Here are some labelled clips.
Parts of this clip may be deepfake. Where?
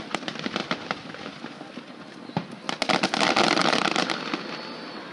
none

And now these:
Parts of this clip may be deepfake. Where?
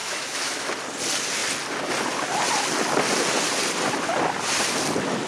0.0-0.7 (autoencoder, DAC-VAE)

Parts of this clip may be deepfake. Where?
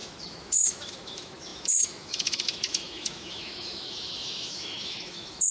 0.0-5.5 (autoencoder, DAC-VAE)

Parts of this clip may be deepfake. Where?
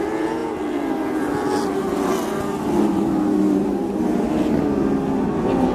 none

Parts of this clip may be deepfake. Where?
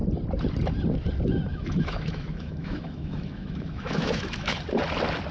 1.5-4.6 (autoencoder, DAC-VAE)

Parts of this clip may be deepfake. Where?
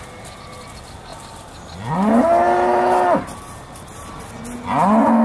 none